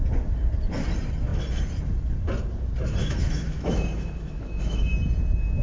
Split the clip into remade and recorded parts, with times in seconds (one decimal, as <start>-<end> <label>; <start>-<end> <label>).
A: 0.0-3.0 recorded; 3.0-4.9 remade; 4.9-5.6 recorded